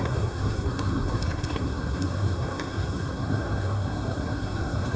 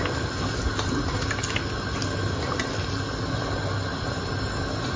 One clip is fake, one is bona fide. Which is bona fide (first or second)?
second